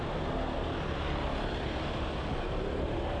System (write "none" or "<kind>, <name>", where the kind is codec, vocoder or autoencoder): none